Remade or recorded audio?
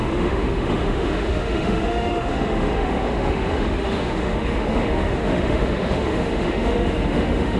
remade